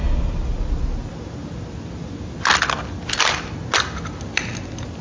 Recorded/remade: recorded